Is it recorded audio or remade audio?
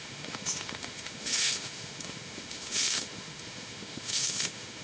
remade